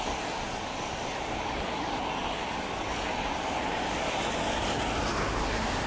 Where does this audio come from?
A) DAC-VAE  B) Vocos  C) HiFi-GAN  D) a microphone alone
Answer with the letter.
D